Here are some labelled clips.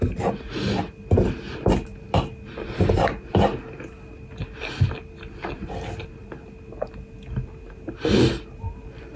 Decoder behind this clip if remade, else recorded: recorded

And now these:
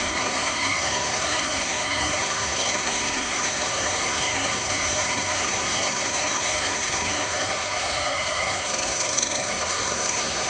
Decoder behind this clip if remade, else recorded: remade, codec, SNAC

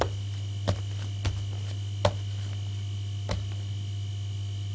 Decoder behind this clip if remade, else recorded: recorded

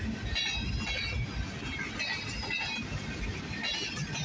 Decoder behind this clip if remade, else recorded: recorded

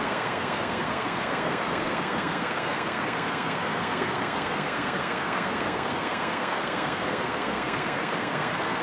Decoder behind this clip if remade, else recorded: remade, codec, SNAC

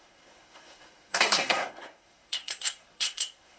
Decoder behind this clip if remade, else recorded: remade, codec, SNAC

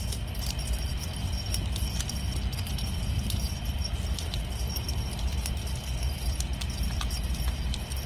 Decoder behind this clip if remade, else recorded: recorded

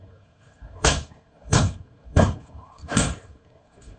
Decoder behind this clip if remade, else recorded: remade, codec, SNAC